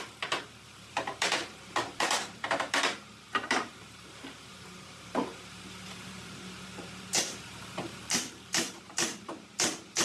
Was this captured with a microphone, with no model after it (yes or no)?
no